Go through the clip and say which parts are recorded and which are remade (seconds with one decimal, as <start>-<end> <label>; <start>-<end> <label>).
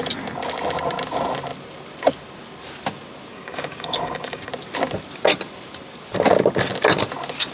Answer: 0.0-3.3 recorded; 3.3-4.5 remade; 4.5-7.5 recorded